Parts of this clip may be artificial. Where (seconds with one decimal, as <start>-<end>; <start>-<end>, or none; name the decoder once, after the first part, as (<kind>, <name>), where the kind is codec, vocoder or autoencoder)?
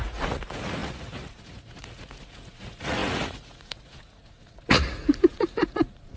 0.0-6.2 (vocoder, Vocos)